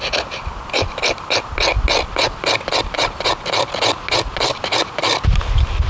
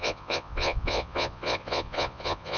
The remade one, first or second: second